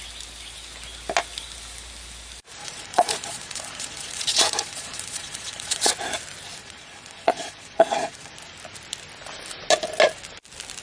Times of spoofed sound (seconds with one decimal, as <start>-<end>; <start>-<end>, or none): 2.6-5.9; 6.6-8.3